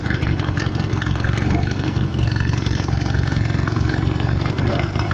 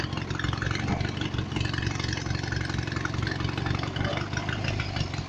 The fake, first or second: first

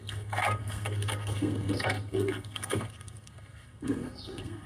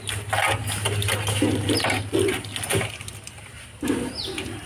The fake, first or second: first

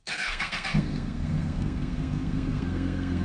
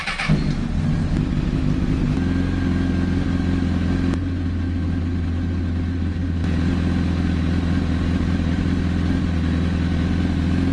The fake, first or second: first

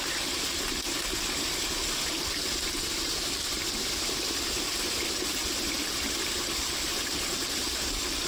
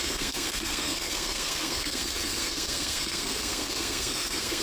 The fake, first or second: second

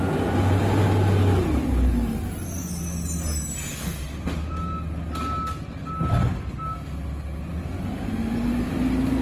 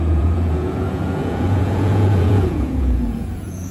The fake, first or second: second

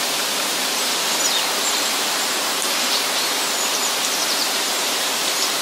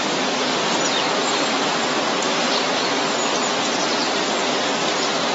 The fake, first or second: first